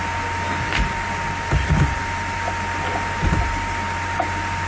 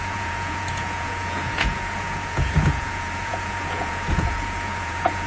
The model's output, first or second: second